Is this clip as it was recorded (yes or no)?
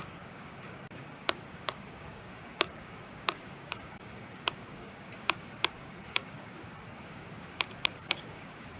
no